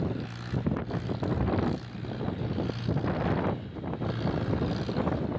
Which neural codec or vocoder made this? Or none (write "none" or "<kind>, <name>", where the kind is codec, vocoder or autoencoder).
none